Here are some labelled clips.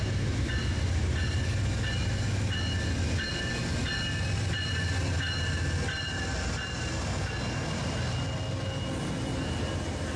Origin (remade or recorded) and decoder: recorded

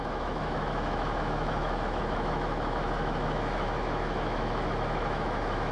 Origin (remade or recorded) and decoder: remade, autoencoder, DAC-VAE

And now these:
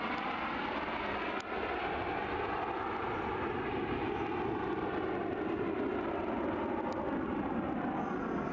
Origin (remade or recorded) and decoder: recorded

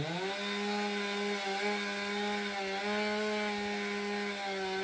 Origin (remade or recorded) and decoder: recorded